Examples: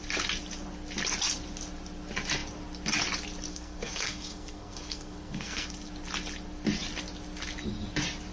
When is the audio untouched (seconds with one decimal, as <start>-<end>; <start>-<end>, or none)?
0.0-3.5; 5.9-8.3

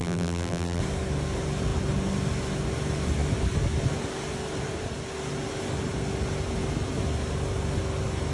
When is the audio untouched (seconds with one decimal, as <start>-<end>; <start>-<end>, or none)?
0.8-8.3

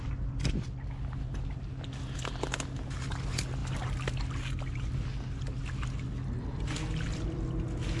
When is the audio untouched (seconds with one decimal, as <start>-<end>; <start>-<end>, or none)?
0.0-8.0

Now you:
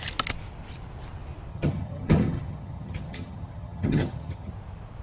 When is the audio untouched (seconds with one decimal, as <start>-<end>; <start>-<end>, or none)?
0.0-1.5; 4.5-5.0

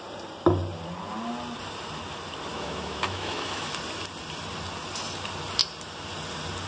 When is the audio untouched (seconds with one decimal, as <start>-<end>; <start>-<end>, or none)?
0.0-2.5; 3.7-6.7